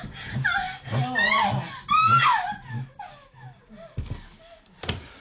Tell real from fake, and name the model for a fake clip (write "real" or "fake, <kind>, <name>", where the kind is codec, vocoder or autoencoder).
real